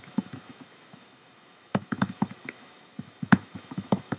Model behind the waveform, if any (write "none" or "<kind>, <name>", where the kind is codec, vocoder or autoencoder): autoencoder, DAC-VAE